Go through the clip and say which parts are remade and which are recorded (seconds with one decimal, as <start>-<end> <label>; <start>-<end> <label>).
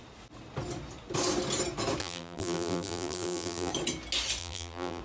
0.0-2.0 recorded; 2.0-3.7 remade; 3.7-4.4 recorded; 4.4-5.0 remade